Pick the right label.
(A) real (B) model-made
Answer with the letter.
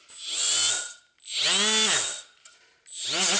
A